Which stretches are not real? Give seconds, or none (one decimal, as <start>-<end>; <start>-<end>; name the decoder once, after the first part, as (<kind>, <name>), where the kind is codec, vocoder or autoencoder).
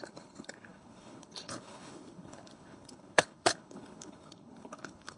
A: 0.0-5.2 (codec, HILCodec)